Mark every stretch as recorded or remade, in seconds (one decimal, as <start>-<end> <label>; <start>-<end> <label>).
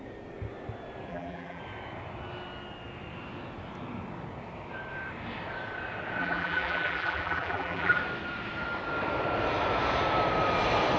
0.0-1.1 recorded; 1.1-1.6 remade; 1.6-6.2 recorded; 6.2-8.0 remade; 8.0-11.0 recorded